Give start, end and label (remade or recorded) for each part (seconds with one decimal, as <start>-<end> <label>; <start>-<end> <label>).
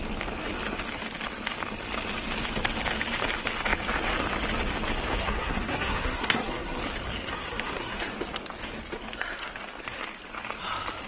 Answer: 0.0-5.2 recorded; 5.2-6.8 remade; 6.8-7.3 recorded; 7.3-8.1 remade; 8.1-11.1 recorded